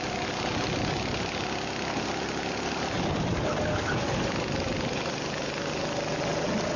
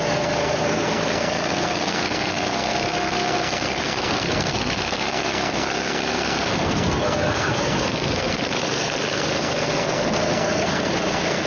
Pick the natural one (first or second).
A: first